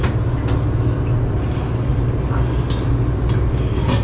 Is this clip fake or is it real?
real